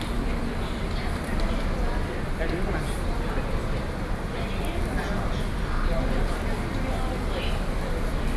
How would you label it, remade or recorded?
recorded